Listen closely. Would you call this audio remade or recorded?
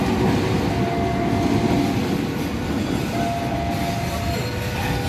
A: recorded